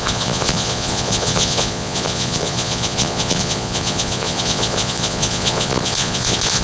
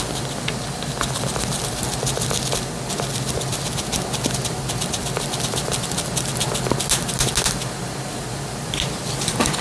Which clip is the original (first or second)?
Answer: second